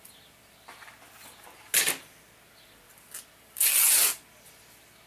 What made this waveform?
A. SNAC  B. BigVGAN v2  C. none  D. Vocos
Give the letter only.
C